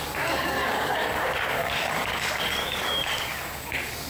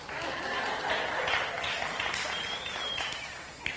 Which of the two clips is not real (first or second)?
first